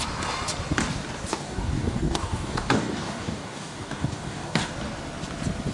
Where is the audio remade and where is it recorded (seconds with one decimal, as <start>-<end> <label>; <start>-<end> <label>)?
0.0-1.3 recorded; 1.3-4.7 remade; 4.7-5.7 recorded